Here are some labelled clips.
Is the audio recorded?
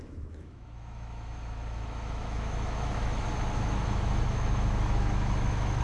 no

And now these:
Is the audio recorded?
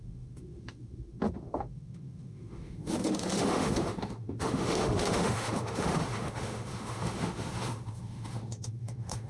no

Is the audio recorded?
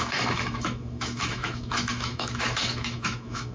no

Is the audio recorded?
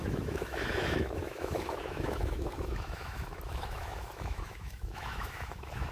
no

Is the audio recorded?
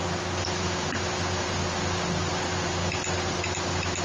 yes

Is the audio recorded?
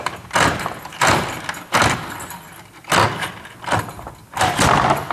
yes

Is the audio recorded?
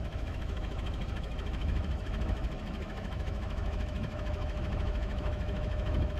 no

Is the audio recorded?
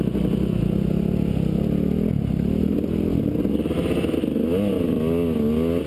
yes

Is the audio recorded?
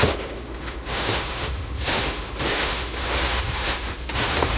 no